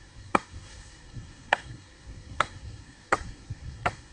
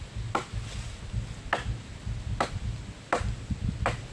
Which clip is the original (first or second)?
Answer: second